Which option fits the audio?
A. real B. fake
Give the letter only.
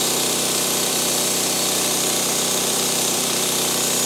B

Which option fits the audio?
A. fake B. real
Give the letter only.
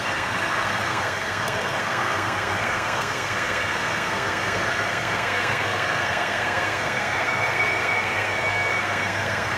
A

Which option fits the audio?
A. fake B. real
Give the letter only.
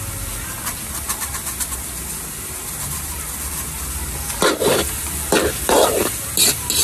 B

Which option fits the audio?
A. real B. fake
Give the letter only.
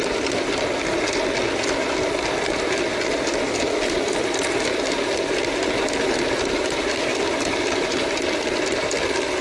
A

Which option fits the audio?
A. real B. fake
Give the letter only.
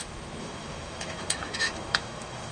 B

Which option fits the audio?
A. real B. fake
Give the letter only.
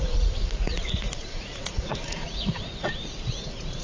B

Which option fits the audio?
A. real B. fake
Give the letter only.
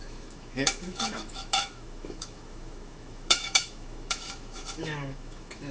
B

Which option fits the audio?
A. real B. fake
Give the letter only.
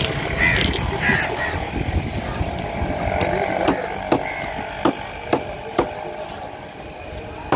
A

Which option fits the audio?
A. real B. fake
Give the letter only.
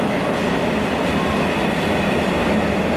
A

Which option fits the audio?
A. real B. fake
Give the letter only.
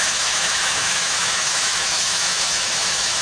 B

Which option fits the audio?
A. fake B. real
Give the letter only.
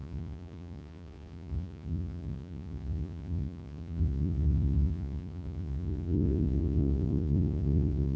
A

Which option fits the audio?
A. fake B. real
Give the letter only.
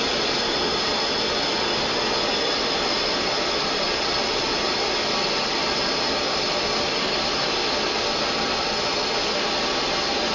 B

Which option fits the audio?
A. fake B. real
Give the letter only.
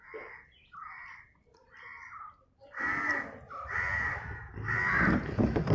B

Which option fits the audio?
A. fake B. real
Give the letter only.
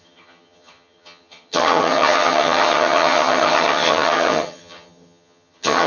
A